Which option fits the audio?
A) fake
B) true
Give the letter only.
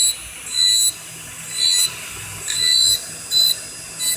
B